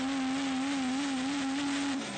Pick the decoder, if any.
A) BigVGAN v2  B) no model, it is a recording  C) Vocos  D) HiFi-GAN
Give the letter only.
B